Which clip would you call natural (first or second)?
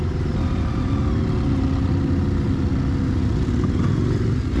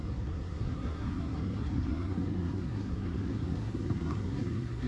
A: first